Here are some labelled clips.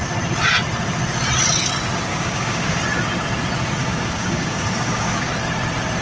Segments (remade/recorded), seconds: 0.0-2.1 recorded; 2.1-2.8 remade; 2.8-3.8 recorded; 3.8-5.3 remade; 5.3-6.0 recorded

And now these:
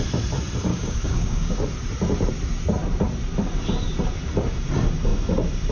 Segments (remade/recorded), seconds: 0.0-0.7 recorded; 0.7-1.6 remade; 1.6-5.7 recorded

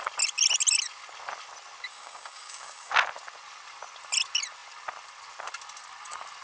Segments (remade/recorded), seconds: 0.0-1.9 recorded; 1.9-2.9 remade; 2.9-6.4 recorded

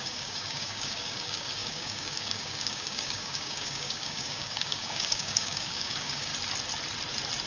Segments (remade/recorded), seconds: 0.0-6.3 remade; 6.3-7.5 recorded

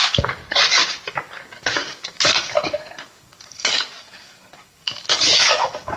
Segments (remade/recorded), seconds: 0.0-0.4 remade; 0.4-1.1 recorded; 1.1-6.0 remade

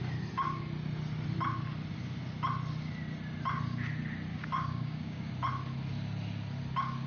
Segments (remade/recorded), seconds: 0.0-4.3 recorded; 4.3-5.3 remade; 5.3-7.1 recorded